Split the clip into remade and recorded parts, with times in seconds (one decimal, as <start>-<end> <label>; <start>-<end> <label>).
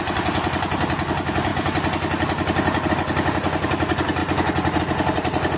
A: 0.0-5.6 recorded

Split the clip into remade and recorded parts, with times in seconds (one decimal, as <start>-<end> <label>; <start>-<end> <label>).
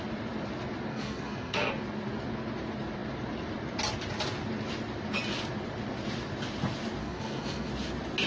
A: 0.0-0.9 recorded; 0.9-1.7 remade; 1.7-7.0 recorded; 7.0-7.7 remade; 7.7-8.3 recorded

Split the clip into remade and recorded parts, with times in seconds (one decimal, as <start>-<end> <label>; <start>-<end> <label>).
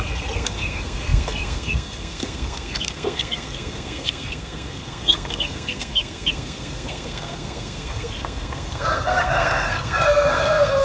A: 0.0-10.8 remade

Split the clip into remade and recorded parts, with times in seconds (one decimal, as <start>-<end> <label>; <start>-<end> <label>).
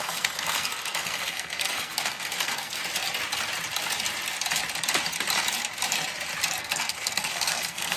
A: 0.0-2.8 remade; 2.8-6.6 recorded; 6.6-8.0 remade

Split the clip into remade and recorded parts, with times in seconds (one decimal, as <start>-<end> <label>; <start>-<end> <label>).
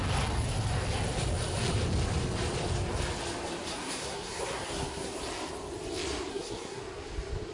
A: 0.0-3.7 recorded; 3.7-5.1 remade; 5.1-6.3 recorded; 6.3-6.8 remade; 6.8-7.5 recorded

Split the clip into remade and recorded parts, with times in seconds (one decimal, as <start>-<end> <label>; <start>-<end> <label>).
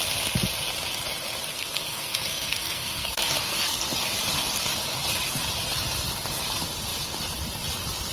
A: 0.0-1.5 recorded; 1.5-3.8 remade; 3.8-8.1 recorded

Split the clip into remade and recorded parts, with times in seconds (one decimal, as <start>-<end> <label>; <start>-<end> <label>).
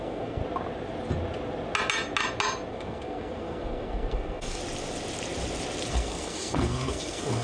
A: 0.0-0.4 remade; 0.4-2.7 recorded; 2.7-4.6 remade; 4.6-5.9 recorded; 5.9-7.4 remade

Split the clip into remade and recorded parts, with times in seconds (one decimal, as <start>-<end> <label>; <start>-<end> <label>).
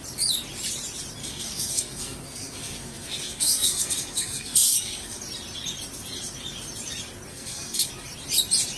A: 0.0-1.2 recorded; 1.2-5.2 remade; 5.2-7.3 recorded; 7.3-7.9 remade; 7.9-8.8 recorded